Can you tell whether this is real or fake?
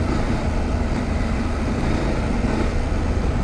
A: real